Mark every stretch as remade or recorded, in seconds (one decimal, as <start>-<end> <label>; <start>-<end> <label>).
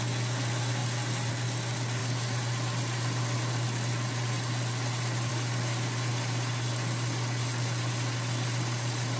0.0-9.2 recorded